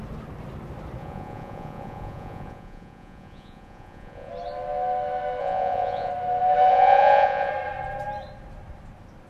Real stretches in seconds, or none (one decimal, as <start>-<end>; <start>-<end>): 0.0-1.0; 4.3-5.4; 6.1-6.7; 7.5-9.3